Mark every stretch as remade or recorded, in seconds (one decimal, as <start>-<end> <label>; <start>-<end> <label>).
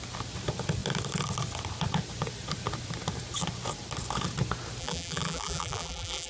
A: 0.0-4.8 recorded; 4.8-6.3 remade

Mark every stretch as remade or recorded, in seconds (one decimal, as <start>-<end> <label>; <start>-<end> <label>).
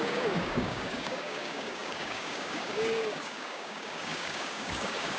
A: 0.0-5.2 remade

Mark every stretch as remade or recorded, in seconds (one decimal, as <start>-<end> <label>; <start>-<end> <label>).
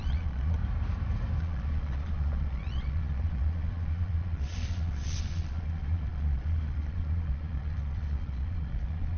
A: 0.0-0.6 remade; 0.6-1.4 recorded; 1.4-9.2 remade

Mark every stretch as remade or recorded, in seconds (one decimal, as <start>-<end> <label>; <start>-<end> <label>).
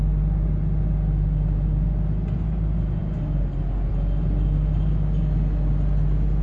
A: 0.0-6.4 recorded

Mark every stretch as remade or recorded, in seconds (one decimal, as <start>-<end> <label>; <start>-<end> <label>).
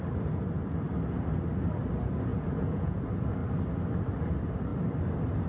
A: 0.0-2.3 recorded; 2.3-3.0 remade; 3.0-5.5 recorded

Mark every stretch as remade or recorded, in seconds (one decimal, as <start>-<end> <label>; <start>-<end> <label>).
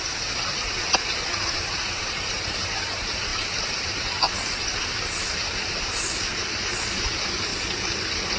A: 0.0-7.5 remade; 7.5-8.4 recorded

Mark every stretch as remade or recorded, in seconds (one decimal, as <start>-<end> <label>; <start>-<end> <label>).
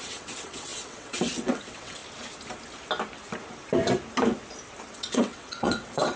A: 0.0-2.0 remade; 2.0-4.8 recorded; 4.8-6.2 remade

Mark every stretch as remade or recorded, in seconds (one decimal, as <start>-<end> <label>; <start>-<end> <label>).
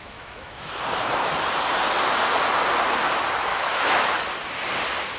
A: 0.0-0.7 remade; 0.7-3.5 recorded; 3.5-4.1 remade; 4.1-5.2 recorded